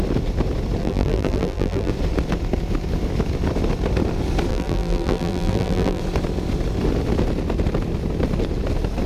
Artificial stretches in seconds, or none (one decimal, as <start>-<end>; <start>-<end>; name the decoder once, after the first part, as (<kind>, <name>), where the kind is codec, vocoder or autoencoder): 0.8-1.9 (vocoder, BigVGAN v2); 4.5-6.0